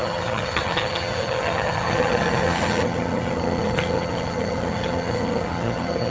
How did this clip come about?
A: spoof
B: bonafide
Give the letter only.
A